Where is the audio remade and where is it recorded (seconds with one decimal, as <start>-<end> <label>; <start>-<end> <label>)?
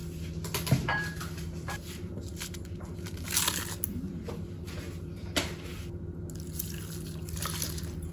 0.0-8.1 recorded